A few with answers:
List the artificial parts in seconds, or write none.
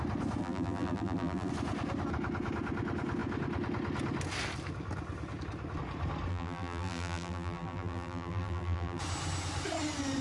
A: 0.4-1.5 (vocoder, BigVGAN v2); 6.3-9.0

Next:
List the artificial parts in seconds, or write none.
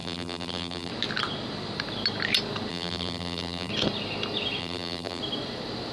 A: 0.0-0.9 (vocoder, BigVGAN v2); 2.7-3.7; 4.6-5.2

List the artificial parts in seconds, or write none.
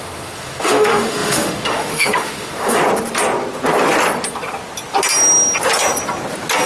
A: 0.0-2.8 (autoencoder, DAC-VAE)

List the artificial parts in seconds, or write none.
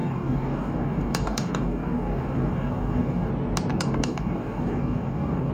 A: 0.0-3.3 (codec, DAC); 3.7-5.5